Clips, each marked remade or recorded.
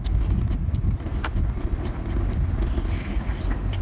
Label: recorded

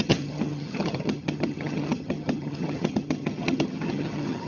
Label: remade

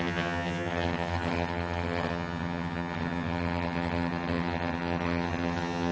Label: remade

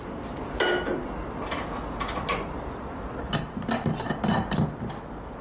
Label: recorded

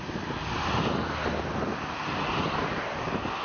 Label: recorded